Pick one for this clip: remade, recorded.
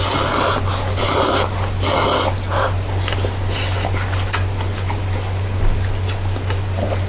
recorded